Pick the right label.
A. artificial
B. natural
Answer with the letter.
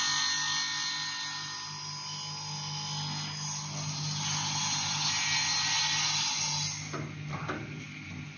B